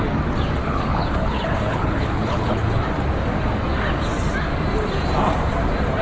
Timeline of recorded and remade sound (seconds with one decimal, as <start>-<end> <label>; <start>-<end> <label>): 0.0-0.6 recorded; 0.6-2.8 remade; 2.8-6.0 recorded

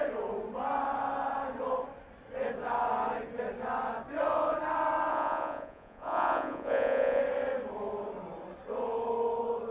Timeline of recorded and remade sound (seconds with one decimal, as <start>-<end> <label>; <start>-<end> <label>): 0.0-5.1 recorded; 5.1-7.2 remade; 7.2-9.7 recorded

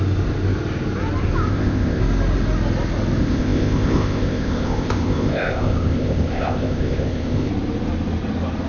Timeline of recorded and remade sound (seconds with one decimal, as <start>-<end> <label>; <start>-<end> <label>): 0.0-1.5 recorded; 1.5-2.0 remade; 2.0-3.2 recorded; 3.2-7.5 remade; 7.5-8.7 recorded

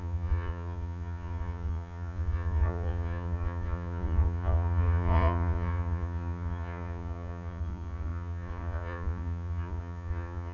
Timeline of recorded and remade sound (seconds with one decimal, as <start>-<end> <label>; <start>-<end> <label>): 0.0-10.5 remade

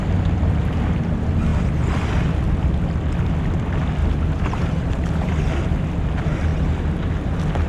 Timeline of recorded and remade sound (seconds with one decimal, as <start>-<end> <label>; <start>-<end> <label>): 0.0-4.0 recorded; 4.0-5.3 remade; 5.3-7.7 recorded